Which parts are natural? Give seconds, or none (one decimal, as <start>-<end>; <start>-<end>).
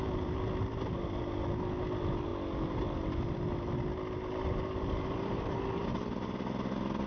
0.0-7.1